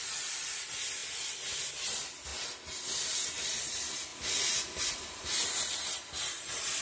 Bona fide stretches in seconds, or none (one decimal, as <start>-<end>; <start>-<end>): 2.3-3.4; 4.1-4.8